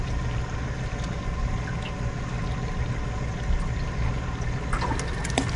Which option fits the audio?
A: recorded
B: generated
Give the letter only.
A